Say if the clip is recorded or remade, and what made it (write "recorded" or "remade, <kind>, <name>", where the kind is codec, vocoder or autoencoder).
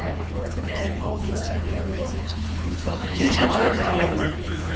remade, codec, HILCodec